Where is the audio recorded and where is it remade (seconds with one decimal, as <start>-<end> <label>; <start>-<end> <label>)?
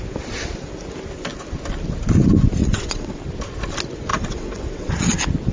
0.0-2.6 recorded; 2.6-3.2 remade; 3.2-4.1 recorded; 4.1-4.9 remade; 4.9-5.5 recorded